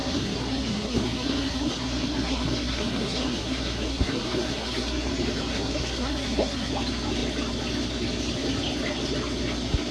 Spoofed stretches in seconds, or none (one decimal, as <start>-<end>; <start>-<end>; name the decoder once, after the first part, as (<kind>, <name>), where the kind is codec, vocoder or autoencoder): 0.0-5.1 (codec, SNAC); 5.5-6.7